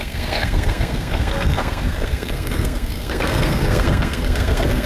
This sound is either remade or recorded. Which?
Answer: remade